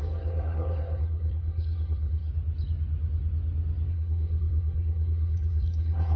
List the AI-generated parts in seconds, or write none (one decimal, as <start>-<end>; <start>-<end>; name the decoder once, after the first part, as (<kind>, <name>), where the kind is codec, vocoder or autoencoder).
0.0-2.3 (codec, SNAC); 3.9-6.2